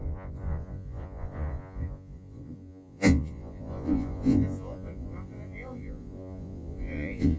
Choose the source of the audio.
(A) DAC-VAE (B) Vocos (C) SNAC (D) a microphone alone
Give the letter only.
B